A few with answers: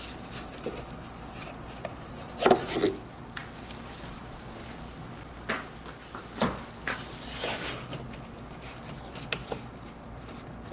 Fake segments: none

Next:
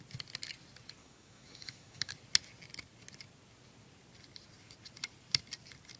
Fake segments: 1.0-2.1

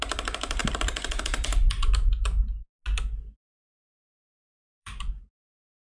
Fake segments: 0.0-2.1; 3.4-5.8